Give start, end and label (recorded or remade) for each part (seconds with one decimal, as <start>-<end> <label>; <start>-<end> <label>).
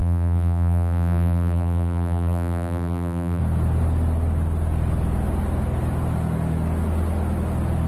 0.0-3.4 remade; 3.4-7.9 recorded